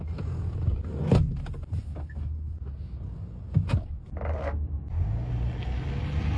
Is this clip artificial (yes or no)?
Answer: no